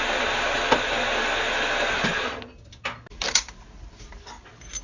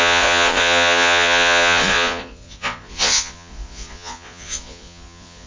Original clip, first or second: first